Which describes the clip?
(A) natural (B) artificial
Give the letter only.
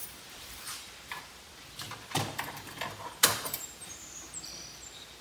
B